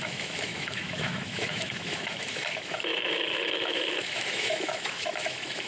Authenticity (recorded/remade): remade